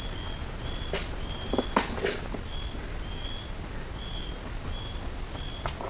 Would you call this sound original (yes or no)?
yes